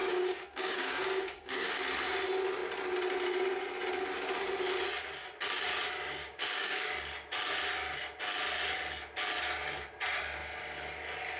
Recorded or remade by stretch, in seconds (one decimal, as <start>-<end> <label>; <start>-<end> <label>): 0.0-1.8 remade; 1.8-6.2 recorded; 6.2-6.9 remade; 6.9-11.4 recorded